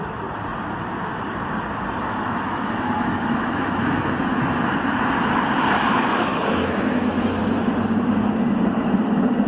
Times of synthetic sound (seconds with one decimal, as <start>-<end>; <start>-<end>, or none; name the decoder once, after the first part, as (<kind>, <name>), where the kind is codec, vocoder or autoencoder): 2.1-4.6 (autoencoder, DAC-VAE); 5.9-7.4